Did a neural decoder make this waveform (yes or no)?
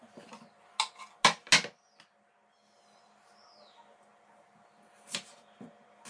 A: no